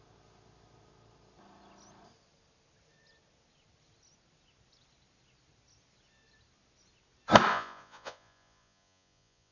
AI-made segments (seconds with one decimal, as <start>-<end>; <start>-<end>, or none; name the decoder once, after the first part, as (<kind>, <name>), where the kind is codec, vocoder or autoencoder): 7.5-9.5 (vocoder, Vocos)